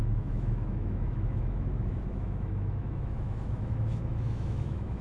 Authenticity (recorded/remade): remade